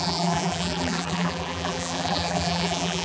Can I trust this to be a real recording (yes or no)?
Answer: no